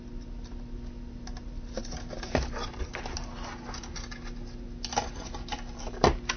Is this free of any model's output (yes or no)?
yes